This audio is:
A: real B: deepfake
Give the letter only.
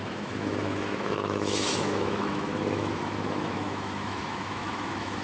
B